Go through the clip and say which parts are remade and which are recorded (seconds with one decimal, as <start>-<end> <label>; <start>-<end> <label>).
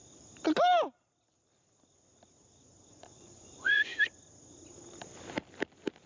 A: 0.0-2.9 recorded; 2.9-3.9 remade; 3.9-6.1 recorded